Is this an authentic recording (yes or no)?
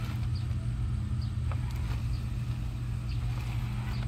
yes